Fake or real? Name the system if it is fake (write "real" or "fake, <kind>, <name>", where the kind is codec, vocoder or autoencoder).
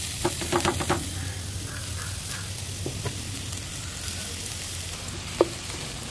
real